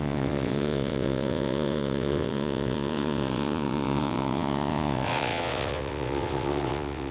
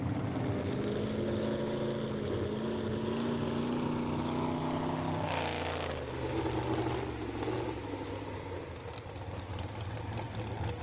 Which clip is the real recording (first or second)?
second